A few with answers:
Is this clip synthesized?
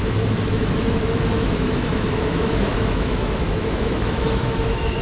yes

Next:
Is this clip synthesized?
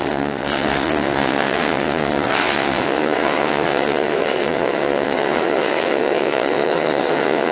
yes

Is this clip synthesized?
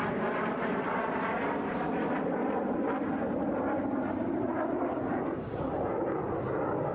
yes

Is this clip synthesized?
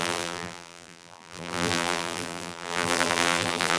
yes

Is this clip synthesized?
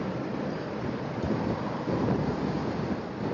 yes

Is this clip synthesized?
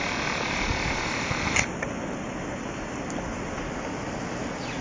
no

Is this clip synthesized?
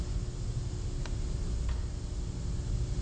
no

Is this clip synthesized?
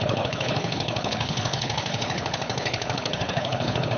yes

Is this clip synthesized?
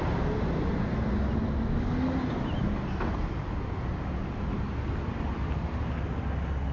no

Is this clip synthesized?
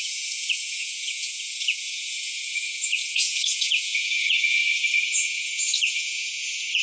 yes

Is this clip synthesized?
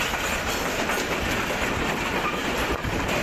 no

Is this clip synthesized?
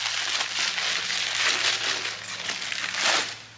no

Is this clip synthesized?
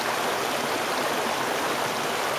no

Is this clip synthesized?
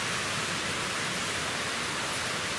no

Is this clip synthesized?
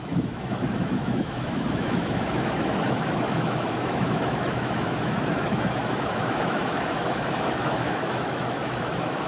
yes